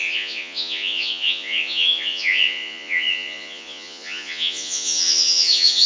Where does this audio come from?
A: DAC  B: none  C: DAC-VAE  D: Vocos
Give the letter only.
D